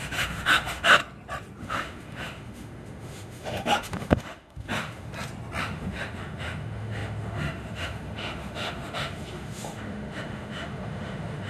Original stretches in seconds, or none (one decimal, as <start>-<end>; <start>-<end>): 1.0-1.6; 5.1-5.6